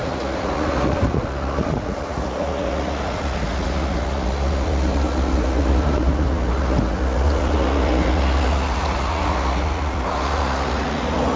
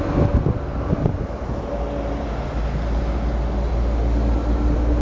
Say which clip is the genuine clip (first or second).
second